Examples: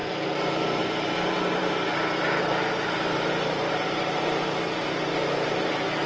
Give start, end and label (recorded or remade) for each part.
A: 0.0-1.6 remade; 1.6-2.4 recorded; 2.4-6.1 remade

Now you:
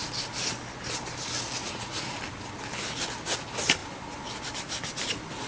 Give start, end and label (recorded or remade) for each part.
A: 0.0-1.6 recorded; 1.6-2.2 remade; 2.2-5.5 recorded

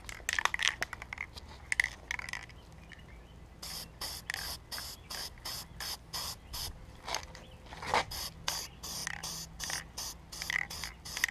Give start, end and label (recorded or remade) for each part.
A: 0.0-11.3 recorded

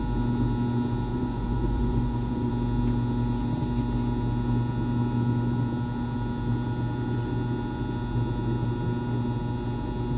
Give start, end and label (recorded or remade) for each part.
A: 0.0-1.1 recorded; 1.1-2.5 remade; 2.5-10.2 recorded